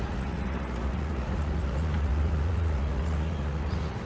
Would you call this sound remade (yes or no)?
yes